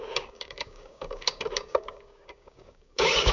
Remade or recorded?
remade